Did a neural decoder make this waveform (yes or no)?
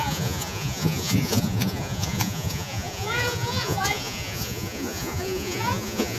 yes